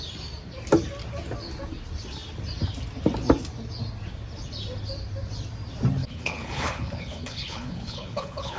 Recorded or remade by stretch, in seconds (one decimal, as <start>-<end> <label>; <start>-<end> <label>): 0.0-6.0 recorded; 6.0-8.6 remade